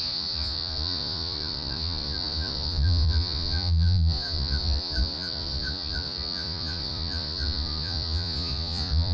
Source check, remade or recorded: remade